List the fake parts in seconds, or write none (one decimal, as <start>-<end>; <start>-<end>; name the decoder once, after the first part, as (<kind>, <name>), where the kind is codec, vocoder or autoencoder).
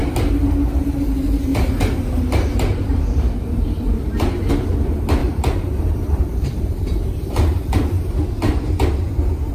1.5-4.5 (vocoder, BigVGAN v2); 5.2-8.1